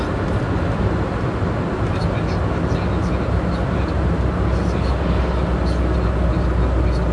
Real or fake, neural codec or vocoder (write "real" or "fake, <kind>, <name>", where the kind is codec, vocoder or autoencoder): real